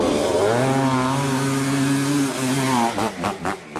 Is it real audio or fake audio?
real